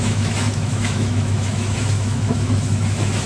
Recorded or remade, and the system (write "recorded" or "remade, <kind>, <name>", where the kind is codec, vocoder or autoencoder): remade, autoencoder, DAC-VAE